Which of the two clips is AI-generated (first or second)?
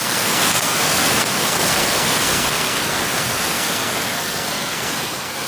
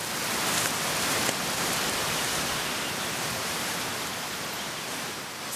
first